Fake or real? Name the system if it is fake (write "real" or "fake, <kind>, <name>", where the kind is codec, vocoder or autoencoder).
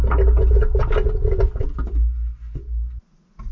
real